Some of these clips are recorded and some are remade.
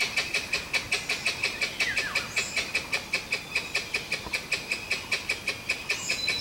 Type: recorded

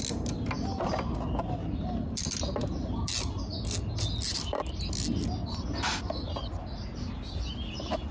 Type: recorded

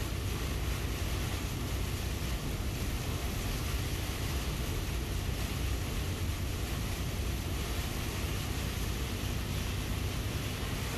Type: recorded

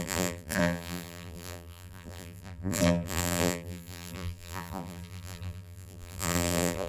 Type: remade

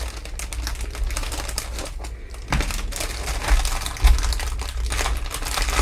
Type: recorded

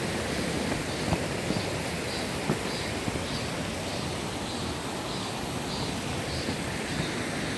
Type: recorded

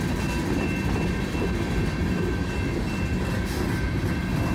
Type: recorded